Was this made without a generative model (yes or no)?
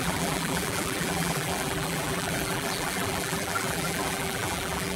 no